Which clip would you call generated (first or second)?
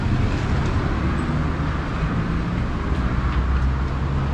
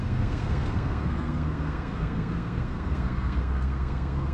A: second